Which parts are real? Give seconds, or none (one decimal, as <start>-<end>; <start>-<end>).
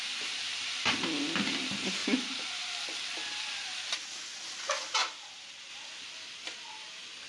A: 0.0-0.5; 1.0-2.0; 2.5-5.0; 5.7-7.3